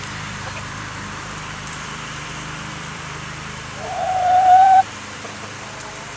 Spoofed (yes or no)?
yes